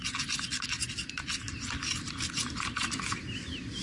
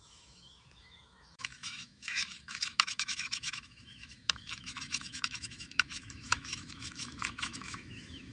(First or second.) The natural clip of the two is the first